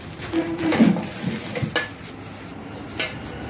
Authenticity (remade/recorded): recorded